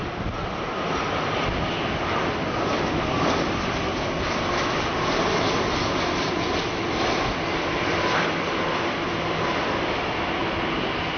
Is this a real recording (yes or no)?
yes